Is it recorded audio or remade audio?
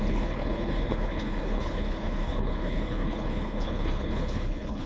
remade